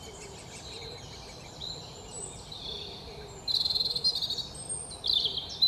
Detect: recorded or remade recorded